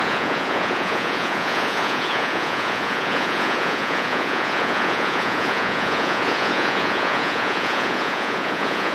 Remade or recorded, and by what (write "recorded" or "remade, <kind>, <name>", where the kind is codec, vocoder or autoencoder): remade, vocoder, Vocos